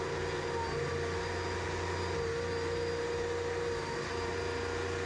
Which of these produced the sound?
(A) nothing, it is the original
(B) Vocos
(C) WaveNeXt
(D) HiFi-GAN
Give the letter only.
A